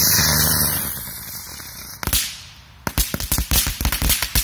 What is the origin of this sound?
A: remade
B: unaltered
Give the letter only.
B